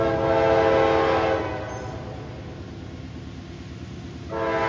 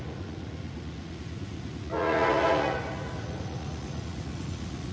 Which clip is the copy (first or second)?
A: second